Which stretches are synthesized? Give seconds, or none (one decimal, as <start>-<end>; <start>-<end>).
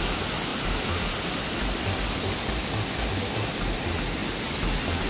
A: 0.5-1.1